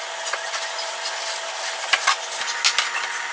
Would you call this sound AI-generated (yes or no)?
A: no